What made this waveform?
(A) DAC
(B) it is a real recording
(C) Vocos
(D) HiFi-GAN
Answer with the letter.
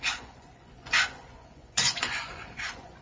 C